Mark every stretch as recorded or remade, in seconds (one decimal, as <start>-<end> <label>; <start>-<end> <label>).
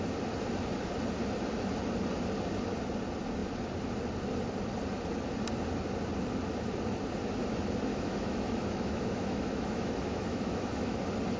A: 0.0-7.9 recorded; 7.9-11.0 remade; 11.0-11.4 recorded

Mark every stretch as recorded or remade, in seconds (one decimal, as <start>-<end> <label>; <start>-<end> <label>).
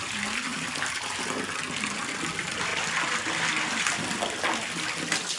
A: 0.0-5.4 recorded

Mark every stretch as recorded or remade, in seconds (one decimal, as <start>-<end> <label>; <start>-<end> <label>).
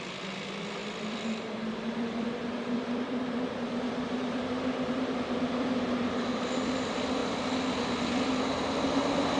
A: 0.0-0.8 recorded; 0.8-5.7 remade; 5.7-9.4 recorded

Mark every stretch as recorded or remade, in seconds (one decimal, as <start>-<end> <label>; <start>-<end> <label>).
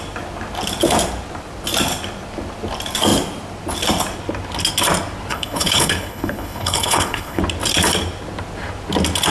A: 0.0-5.3 recorded; 5.3-7.4 remade; 7.4-9.3 recorded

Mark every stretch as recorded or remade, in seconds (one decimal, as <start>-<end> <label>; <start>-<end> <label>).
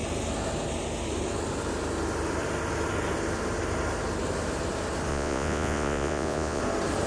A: 0.0-5.1 recorded; 5.1-6.6 remade; 6.6-7.1 recorded